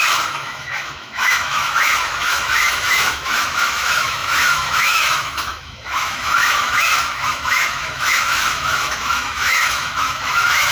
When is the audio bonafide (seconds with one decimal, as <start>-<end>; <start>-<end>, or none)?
none